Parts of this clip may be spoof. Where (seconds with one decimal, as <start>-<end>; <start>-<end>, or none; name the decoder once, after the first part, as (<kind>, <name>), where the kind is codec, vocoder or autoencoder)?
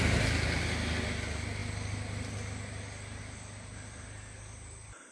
none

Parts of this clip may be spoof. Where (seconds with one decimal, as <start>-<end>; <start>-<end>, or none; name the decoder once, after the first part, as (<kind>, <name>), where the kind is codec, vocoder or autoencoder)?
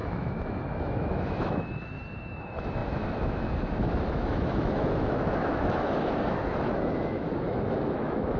0.0-8.4 (autoencoder, DAC-VAE)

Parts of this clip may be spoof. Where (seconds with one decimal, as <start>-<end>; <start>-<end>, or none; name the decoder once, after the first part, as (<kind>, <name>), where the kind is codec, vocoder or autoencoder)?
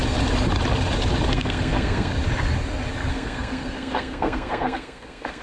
1.3-2.1 (codec, SNAC); 3.1-5.4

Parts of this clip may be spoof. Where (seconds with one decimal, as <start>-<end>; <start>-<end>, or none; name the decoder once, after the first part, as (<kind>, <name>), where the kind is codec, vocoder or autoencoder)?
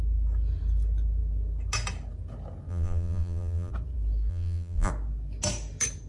2.7-3.7 (vocoder, BigVGAN v2); 4.3-4.9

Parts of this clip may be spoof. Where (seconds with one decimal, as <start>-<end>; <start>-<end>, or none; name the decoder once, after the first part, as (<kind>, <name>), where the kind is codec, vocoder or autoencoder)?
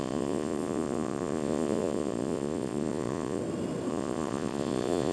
0.0-3.4 (vocoder, Vocos); 3.9-5.1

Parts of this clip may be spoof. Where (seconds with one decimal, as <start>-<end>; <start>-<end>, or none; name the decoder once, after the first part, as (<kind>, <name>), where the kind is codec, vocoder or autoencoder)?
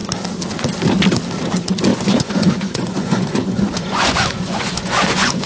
1.9-5.5 (vocoder, Vocos)